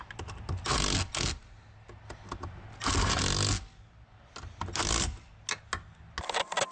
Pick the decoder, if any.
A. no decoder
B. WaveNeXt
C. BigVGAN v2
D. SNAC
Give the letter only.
A